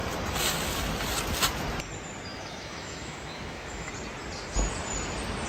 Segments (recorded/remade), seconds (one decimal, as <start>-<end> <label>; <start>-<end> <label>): 0.0-2.3 recorded; 2.3-3.9 remade; 3.9-5.5 recorded